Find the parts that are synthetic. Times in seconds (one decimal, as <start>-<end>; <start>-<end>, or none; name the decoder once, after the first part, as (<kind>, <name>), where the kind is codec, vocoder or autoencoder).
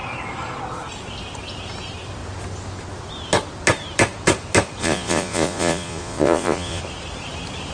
4.8-6.8 (vocoder, Vocos)